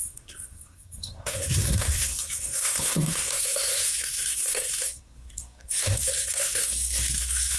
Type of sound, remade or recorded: remade